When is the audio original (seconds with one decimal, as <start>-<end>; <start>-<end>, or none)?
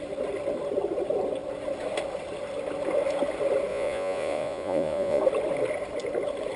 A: 0.0-3.7; 5.2-6.6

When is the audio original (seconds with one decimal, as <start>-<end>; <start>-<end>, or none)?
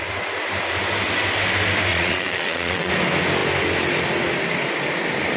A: 0.0-1.9; 2.9-5.4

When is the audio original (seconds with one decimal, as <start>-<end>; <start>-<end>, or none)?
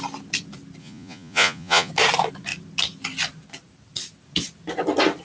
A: 0.0-0.8; 1.9-5.2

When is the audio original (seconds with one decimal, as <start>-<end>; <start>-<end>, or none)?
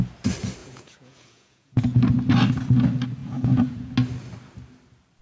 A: 0.0-0.6; 1.8-3.2; 3.9-5.2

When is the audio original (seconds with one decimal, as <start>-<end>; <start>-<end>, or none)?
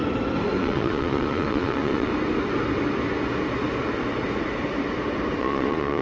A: 0.0-0.6; 2.1-5.4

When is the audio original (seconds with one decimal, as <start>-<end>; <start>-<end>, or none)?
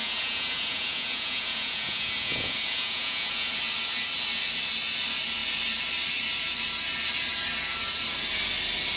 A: 3.5-9.0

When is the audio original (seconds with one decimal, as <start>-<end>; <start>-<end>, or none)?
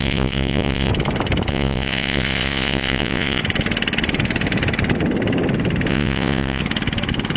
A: 0.9-1.5; 3.4-5.9; 6.6-7.4